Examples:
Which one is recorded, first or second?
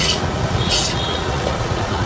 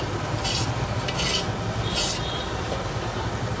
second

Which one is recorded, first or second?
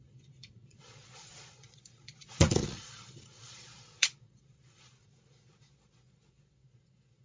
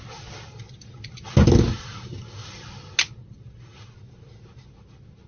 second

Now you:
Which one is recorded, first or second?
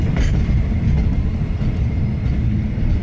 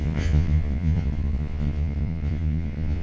first